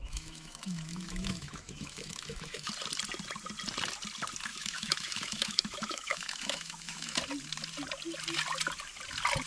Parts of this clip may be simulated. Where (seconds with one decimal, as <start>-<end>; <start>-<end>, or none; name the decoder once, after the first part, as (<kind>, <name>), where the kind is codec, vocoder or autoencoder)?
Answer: 0.0-2.7 (autoencoder, DAC-VAE); 4.5-7.2